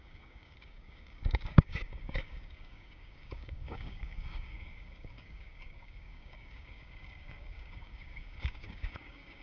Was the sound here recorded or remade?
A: remade